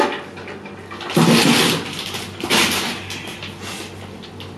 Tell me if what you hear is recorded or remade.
recorded